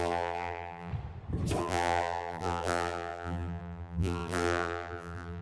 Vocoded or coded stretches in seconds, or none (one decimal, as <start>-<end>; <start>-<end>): 0.0-0.9; 1.6-5.4